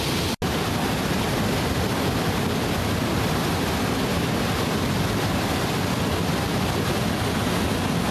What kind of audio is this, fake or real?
real